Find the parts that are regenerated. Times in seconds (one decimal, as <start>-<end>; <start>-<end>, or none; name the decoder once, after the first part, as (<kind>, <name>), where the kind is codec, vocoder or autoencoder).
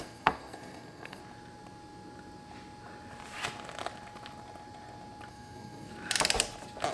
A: 0.0-1.2 (codec, SNAC); 5.3-5.9